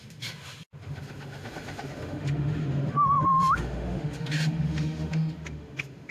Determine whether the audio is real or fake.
fake